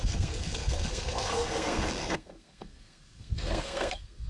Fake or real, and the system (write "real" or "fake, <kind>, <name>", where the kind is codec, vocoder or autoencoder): fake, codec, SNAC